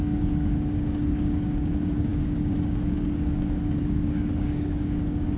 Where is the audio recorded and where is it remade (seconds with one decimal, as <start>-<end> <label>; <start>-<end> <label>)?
0.0-5.4 remade